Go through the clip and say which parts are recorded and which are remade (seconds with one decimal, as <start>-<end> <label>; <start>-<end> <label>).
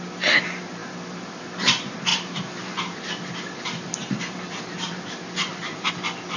0.0-2.1 recorded; 2.1-5.9 remade; 5.9-6.4 recorded